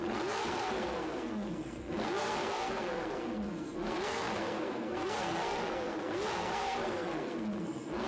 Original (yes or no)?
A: no